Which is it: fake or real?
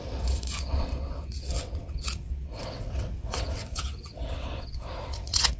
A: fake